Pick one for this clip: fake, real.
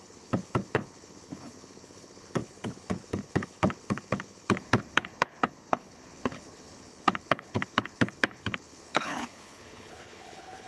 fake